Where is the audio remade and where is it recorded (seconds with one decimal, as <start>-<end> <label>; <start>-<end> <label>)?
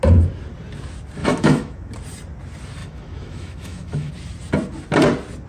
0.0-1.2 recorded; 1.2-1.9 remade; 1.9-2.8 recorded; 2.8-4.1 remade; 4.1-5.5 recorded